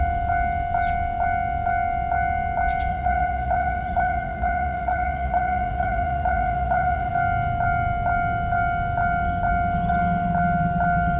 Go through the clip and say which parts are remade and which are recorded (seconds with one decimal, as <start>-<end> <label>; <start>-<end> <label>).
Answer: 0.0-2.9 recorded; 2.9-7.1 remade; 7.1-11.2 recorded